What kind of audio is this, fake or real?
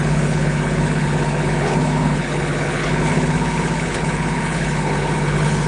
fake